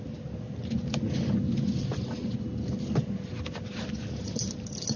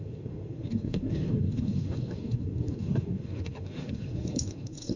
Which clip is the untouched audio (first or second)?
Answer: first